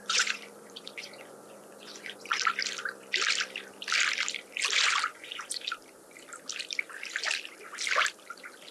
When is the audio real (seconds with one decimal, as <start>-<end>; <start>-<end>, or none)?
2.4-5.1; 5.6-8.7